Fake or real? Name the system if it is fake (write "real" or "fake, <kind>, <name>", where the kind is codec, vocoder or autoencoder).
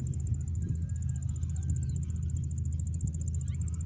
real